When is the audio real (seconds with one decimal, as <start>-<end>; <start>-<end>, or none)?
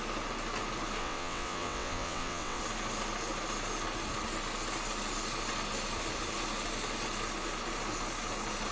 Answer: 0.0-1.0; 2.6-8.7